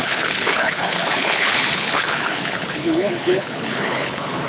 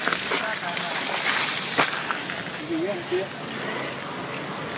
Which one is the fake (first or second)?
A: first